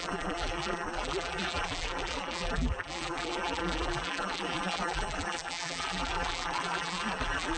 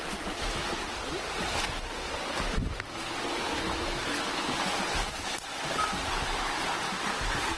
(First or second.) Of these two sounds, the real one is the second